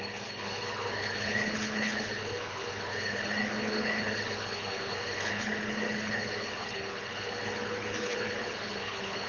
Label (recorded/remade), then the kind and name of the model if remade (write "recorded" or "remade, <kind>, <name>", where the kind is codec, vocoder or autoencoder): remade, codec, HILCodec